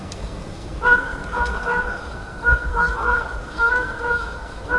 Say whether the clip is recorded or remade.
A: remade